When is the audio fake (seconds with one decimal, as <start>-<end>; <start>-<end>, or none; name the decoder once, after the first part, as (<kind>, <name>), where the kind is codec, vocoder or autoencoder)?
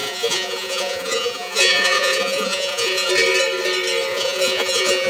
0.0-3.1 (vocoder, Vocos); 4.1-5.1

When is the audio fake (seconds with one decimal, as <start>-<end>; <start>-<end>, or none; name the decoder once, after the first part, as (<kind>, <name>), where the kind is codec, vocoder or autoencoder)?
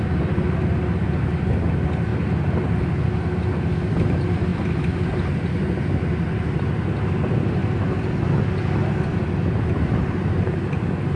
none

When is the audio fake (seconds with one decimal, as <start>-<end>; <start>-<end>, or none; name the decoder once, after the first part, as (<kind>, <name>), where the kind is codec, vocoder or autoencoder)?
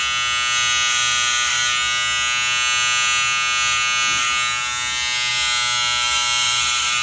none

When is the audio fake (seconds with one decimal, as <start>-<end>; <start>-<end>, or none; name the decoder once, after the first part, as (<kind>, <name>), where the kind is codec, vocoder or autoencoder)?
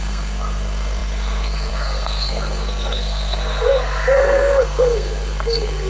0.0-5.9 (codec, SNAC)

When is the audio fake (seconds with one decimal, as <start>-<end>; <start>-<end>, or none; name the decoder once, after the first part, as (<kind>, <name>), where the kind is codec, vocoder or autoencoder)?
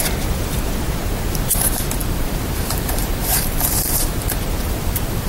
2.0-5.3 (vocoder, BigVGAN v2)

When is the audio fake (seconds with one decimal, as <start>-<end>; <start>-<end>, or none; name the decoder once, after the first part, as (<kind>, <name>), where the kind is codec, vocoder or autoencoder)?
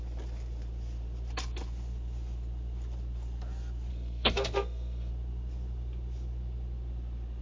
3.9-5.1 (codec, SNAC)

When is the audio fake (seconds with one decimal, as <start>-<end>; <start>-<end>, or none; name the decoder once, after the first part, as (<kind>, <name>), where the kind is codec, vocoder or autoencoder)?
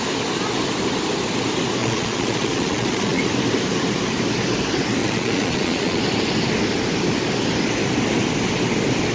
1.8-3.2 (vocoder, Vocos); 5.0-6.0